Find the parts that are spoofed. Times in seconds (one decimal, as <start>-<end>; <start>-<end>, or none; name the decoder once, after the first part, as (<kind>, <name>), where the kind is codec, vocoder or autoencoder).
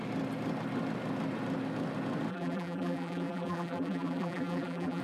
2.3-5.0 (vocoder, BigVGAN v2)